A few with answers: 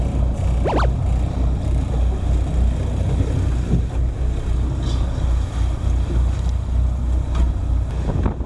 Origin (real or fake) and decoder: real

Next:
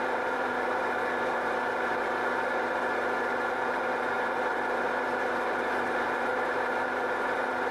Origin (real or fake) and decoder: fake, vocoder, BigVGAN v2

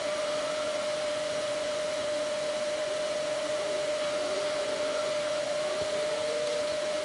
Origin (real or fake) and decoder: fake, vocoder, Vocos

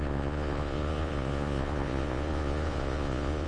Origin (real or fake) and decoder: fake, vocoder, Vocos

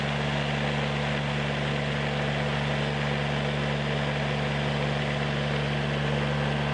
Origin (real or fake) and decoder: real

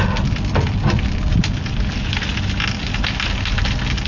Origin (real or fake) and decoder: real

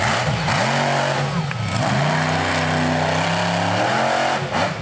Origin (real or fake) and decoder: real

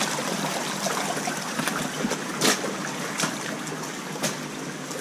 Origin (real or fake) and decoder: real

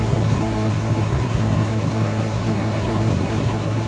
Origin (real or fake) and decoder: fake, codec, SNAC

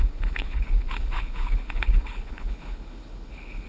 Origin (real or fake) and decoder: fake, codec, HILCodec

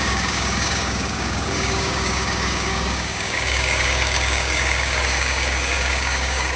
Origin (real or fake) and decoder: fake, codec, DAC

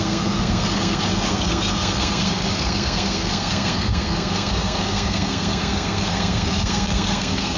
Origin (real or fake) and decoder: fake, codec, SNAC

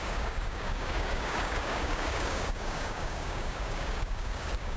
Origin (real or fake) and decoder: fake, codec, DAC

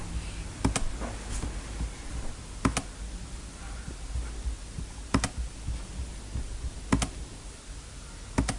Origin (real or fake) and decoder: real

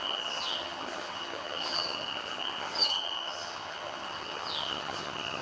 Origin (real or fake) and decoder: fake, vocoder, HiFi-GAN